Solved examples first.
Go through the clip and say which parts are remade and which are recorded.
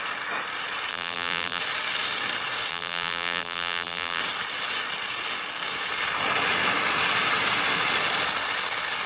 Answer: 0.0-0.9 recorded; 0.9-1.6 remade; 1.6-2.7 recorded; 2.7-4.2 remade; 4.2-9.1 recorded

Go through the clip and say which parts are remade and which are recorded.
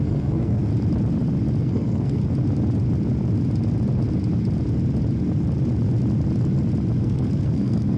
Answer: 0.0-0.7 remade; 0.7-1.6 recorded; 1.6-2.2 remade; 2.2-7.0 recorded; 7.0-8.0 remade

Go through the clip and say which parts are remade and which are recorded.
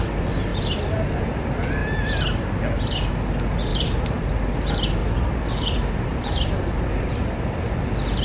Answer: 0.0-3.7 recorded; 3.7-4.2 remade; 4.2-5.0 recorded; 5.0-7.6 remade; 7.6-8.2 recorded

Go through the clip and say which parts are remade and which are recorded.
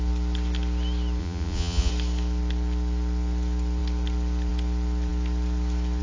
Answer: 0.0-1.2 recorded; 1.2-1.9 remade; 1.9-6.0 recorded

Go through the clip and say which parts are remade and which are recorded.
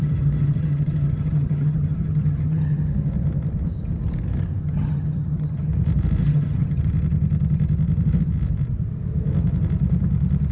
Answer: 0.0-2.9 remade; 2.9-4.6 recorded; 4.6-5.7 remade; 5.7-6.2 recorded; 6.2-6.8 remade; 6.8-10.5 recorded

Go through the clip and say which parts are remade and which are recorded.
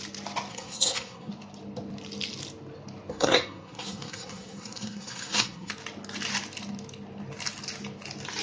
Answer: 0.0-0.5 recorded; 0.5-1.3 remade; 1.3-3.1 recorded; 3.1-5.7 remade; 5.7-8.4 recorded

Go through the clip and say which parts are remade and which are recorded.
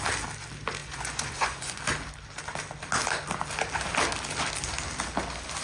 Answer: 0.0-0.8 recorded; 0.8-1.8 remade; 1.8-5.6 recorded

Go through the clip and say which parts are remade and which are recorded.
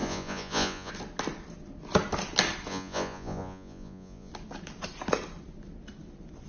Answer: 0.0-0.9 remade; 0.9-2.7 recorded; 2.7-4.3 remade; 4.3-6.5 recorded